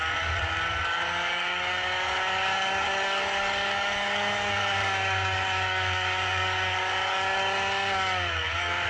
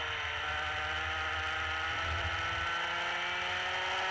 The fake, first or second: first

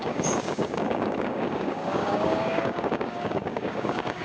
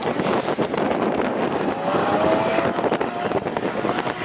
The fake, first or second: first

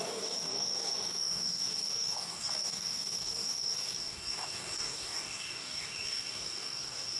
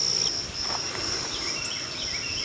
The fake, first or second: first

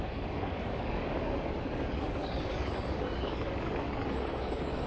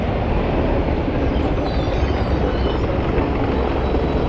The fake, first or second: first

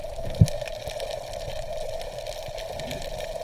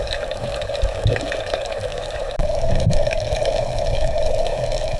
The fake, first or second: second